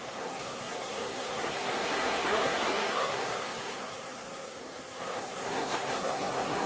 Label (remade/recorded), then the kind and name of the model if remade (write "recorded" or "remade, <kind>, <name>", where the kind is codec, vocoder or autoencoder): remade, codec, SNAC